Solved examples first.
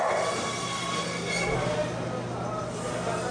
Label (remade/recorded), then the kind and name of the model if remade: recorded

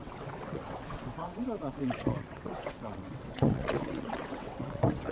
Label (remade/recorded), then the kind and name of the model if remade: remade, vocoder, WaveNeXt